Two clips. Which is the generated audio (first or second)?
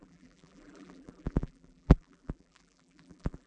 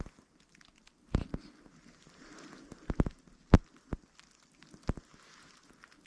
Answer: first